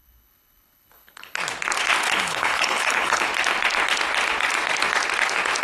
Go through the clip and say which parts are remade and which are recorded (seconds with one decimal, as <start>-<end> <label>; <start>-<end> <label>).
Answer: 0.0-1.4 remade; 1.4-2.1 recorded; 2.1-3.3 remade; 3.3-5.6 recorded